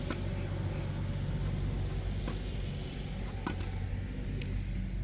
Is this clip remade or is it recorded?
recorded